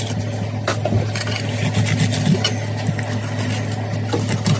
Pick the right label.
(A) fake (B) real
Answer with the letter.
B